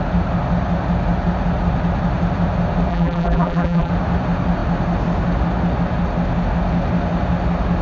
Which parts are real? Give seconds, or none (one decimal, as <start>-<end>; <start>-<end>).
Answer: 0.0-2.9; 3.9-7.8